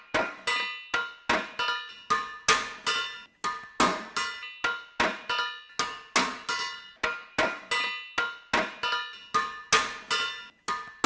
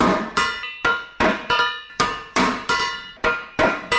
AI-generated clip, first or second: second